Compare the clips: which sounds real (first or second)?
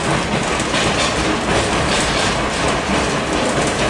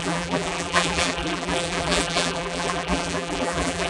first